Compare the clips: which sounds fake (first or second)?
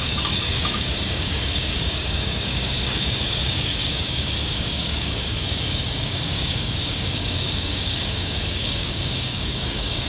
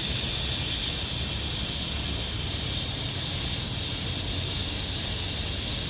first